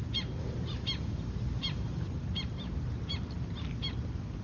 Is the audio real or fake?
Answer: real